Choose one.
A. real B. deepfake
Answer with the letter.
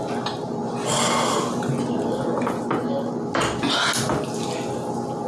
A